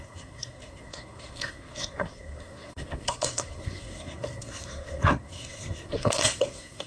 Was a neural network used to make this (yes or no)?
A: yes